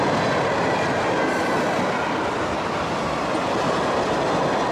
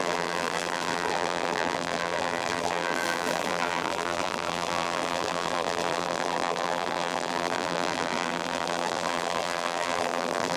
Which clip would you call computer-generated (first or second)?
second